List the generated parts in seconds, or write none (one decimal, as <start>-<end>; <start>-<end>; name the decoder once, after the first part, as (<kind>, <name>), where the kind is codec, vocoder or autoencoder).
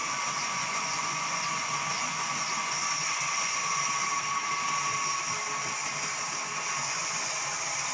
0.0-3.8 (vocoder, Vocos); 6.8-7.4